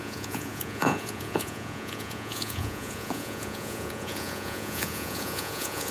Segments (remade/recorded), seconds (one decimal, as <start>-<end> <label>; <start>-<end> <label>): 0.0-5.9 remade